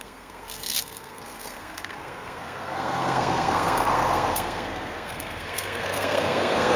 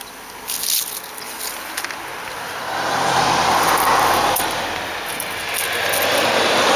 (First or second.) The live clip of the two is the second